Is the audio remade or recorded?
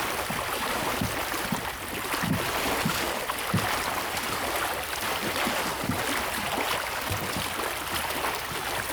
recorded